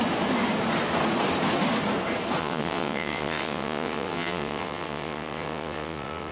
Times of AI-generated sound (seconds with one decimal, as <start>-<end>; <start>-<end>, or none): 2.4-6.3